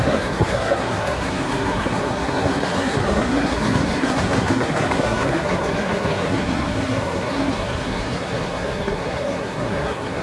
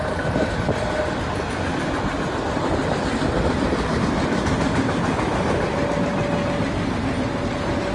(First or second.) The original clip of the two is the second